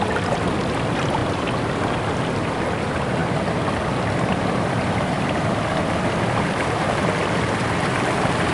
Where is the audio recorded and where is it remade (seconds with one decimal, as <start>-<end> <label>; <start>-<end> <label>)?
0.0-1.2 remade; 1.2-2.8 recorded; 2.8-3.2 remade; 3.2-3.7 recorded; 3.7-4.3 remade; 4.3-7.4 recorded; 7.4-8.5 remade